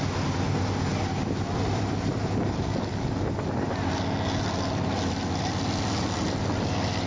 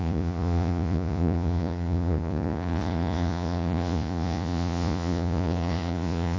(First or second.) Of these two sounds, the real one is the first